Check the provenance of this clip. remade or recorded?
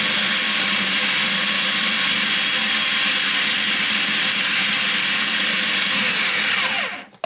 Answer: recorded